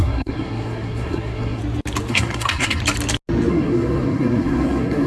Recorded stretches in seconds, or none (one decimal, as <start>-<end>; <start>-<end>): 1.6-2.1; 2.8-3.5